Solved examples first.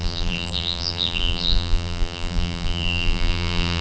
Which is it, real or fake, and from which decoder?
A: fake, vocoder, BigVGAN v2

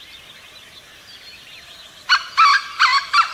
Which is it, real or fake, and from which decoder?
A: real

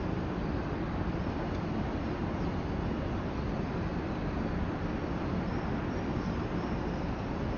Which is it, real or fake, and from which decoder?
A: real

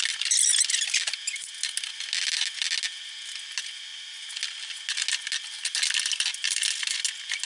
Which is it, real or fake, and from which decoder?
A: real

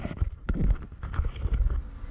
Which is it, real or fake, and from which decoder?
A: real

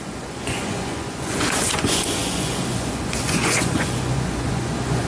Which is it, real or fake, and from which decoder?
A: fake, vocoder, Vocos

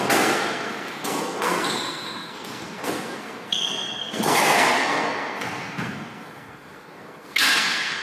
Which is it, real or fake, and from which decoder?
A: fake, codec, SNAC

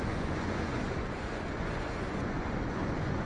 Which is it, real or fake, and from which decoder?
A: fake, vocoder, Vocos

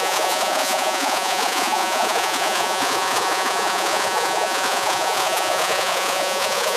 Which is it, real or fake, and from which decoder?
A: fake, vocoder, Vocos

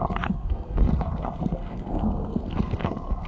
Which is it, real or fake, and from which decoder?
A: fake, codec, SNAC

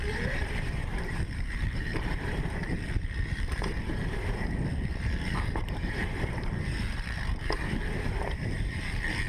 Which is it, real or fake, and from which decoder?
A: fake, vocoder, BigVGAN v2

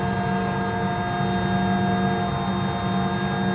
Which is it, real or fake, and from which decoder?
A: real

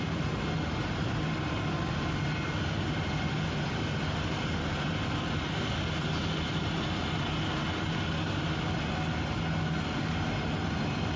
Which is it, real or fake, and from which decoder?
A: real